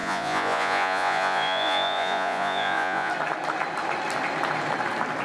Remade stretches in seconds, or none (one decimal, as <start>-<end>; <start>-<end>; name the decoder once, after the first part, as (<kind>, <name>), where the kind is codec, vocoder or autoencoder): 0.0-3.1 (vocoder, Vocos)